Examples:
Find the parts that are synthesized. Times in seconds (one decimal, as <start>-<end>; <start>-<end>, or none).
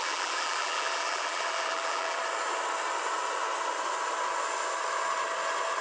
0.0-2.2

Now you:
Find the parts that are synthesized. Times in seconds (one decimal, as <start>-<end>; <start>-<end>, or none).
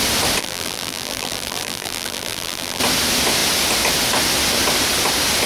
0.4-2.8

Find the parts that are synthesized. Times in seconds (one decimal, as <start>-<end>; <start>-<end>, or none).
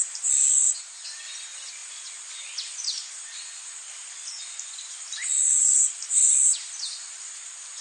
none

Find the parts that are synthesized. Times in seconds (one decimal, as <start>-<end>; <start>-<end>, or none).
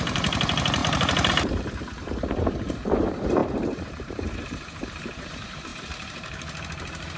0.0-7.2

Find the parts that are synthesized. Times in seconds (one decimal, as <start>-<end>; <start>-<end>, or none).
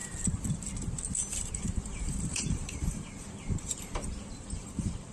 1.7-5.1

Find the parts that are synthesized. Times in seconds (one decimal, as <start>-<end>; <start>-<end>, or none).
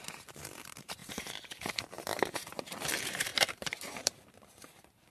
0.0-5.1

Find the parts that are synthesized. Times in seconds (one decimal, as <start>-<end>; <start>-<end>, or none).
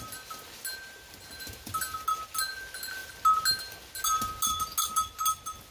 none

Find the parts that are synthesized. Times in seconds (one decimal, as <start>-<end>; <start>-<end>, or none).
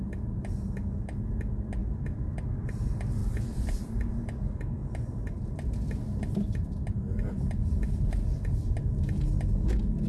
1.8-2.4; 3.2-4.1; 4.8-8.1